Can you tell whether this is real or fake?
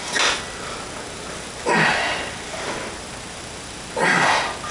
real